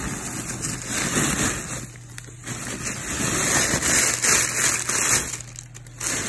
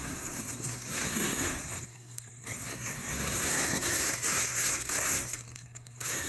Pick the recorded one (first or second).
first